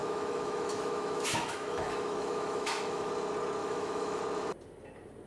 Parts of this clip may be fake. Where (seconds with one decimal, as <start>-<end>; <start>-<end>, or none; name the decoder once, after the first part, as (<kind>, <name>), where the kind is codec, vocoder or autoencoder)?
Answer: 0.0-3.1 (autoencoder, DAC-VAE); 3.6-4.2